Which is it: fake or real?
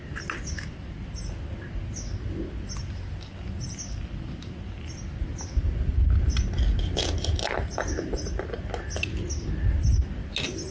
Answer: real